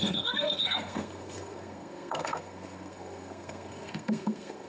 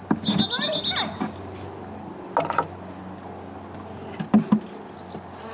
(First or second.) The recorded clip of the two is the second